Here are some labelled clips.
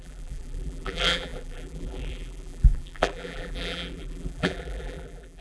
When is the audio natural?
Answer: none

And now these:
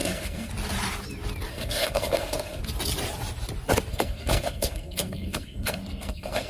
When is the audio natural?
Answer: 0.5-1.5; 2.6-3.9

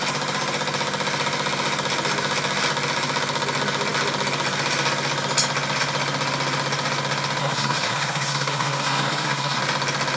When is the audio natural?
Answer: 0.0-7.4; 9.6-10.2

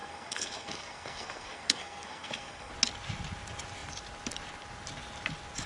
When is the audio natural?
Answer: 2.7-5.7

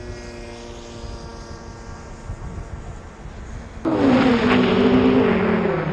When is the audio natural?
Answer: 0.0-5.9

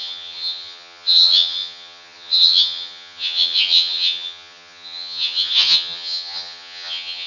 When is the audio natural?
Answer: none

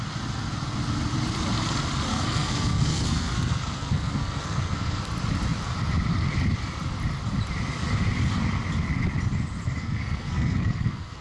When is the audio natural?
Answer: 0.0-2.1; 5.0-9.8